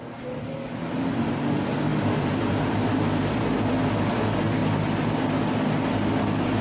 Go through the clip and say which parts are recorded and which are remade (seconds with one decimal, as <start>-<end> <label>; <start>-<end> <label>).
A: 0.0-1.9 recorded; 1.9-3.4 remade; 3.4-6.6 recorded